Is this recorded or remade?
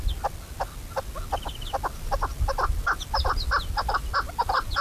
recorded